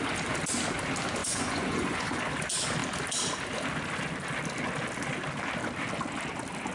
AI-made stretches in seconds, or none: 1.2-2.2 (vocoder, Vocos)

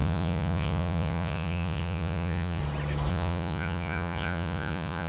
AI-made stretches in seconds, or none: 0.0-2.6 (vocoder, Vocos); 3.1-5.1

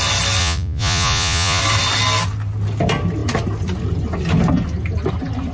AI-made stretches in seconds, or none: 0.4-1.6 (vocoder, Vocos)

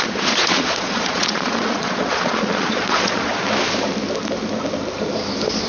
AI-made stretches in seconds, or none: 0.0-3.4 (vocoder, Vocos)

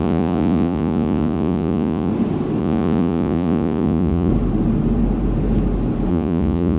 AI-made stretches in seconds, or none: 0.0-2.1 (vocoder, Vocos); 2.6-4.3; 6.1-6.8

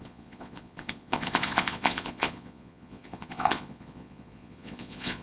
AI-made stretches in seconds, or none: 0.0-5.2 (vocoder, Vocos)

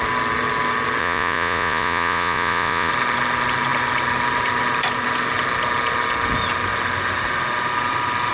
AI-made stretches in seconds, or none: 1.0-2.9 (vocoder, Vocos)